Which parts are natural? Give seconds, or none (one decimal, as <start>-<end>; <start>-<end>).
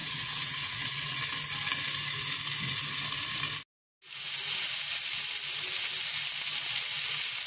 1.2-7.5